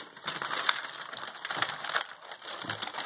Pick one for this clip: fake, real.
real